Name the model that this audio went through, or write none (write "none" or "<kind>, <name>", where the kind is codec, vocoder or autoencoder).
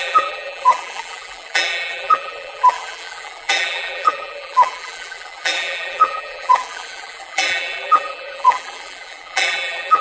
vocoder, BigVGAN v2